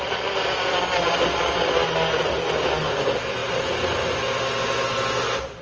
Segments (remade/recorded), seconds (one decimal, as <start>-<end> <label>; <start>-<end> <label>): 0.0-5.6 recorded

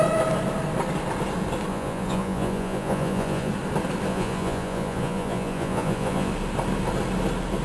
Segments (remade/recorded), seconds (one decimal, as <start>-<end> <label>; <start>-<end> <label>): 0.0-1.7 recorded; 1.7-3.5 remade; 3.5-4.1 recorded; 4.1-6.3 remade; 6.3-7.6 recorded

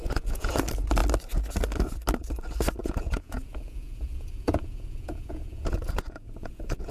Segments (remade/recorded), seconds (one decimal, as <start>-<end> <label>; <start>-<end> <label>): 0.0-0.5 remade; 0.5-2.8 recorded; 2.8-6.9 remade

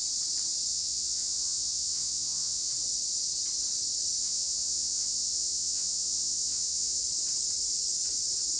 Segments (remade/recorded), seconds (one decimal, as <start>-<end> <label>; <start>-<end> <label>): 0.0-0.7 recorded; 0.7-2.7 remade; 2.7-4.2 recorded; 4.2-7.0 remade; 7.0-8.6 recorded

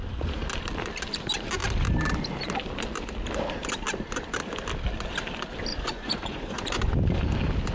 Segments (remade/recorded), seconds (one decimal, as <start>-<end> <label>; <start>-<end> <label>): 0.0-5.7 recorded; 5.7-6.9 remade; 6.9-7.7 recorded